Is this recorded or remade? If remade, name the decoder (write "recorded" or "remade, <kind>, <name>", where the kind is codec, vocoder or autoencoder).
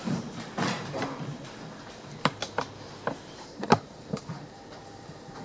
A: remade, vocoder, BigVGAN v2